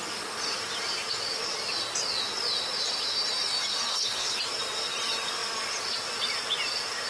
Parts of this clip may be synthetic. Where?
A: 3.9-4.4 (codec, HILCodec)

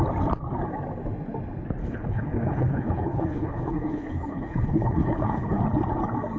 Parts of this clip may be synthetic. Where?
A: 1.8-5.6 (codec, HILCodec)

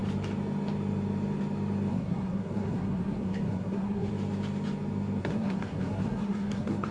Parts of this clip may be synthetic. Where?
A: 1.9-4.1 (codec, SNAC); 5.2-6.9

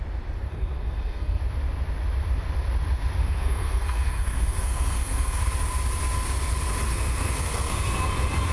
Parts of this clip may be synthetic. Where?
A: 0.5-1.4 (codec, SNAC); 3.2-5.4; 6.9-8.1

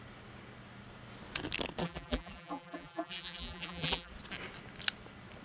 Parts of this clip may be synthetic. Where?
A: 1.8-4.1 (vocoder, BigVGAN v2)

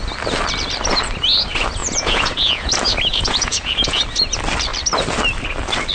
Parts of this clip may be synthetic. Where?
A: 1.8-2.7 (vocoder, Vocos); 3.1-4.0

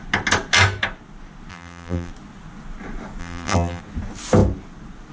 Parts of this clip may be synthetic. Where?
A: 1.5-2.1 (vocoder, BigVGAN v2); 3.2-3.8

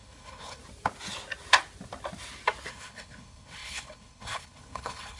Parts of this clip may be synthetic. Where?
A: 0.0-0.6 (codec, HILCodec); 2.7-5.2